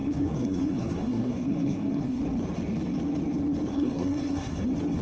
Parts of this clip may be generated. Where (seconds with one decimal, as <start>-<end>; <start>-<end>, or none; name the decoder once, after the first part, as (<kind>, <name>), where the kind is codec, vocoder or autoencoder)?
0.0-2.2 (codec, SNAC); 3.7-4.6

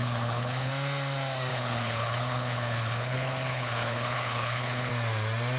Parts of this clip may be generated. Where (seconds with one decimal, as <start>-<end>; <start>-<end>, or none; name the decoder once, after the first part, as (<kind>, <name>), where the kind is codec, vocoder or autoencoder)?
0.0-0.7 (codec, HILCodec); 1.5-4.9

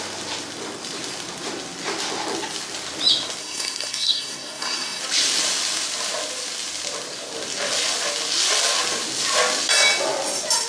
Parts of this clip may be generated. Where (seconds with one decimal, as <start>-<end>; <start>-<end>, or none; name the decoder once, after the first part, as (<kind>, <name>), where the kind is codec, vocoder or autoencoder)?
3.4-5.0 (codec, SNAC)